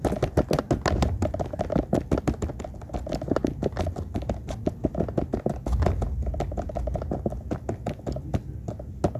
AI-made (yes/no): no